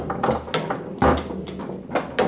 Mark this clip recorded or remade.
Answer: recorded